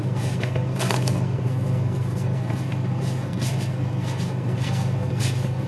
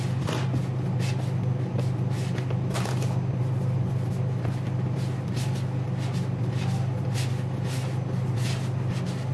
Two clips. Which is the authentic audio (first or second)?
second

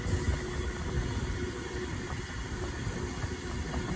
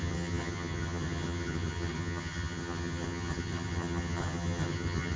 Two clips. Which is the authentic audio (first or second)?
first